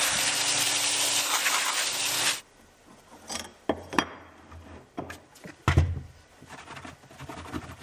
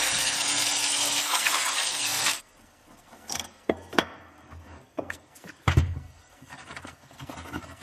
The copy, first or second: second